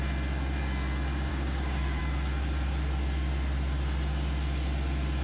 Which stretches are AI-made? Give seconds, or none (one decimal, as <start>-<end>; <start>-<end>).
1.3-2.0